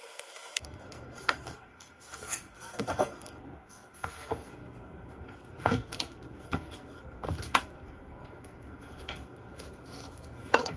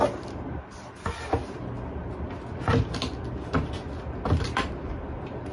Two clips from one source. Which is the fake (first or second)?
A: first